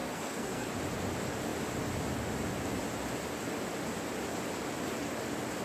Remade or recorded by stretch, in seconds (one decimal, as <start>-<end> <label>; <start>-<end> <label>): 0.0-0.7 remade; 0.7-5.6 recorded